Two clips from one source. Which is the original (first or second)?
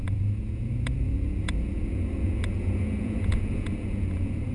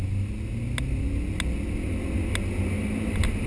second